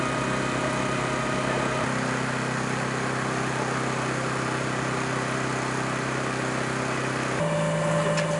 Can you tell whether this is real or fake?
real